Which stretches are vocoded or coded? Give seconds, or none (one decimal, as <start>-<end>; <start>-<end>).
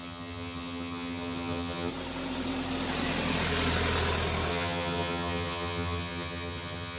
0.0-1.9; 4.5-7.0